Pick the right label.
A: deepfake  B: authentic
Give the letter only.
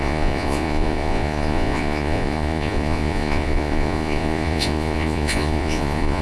A